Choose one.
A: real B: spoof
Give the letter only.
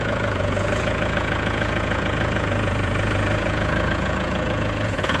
B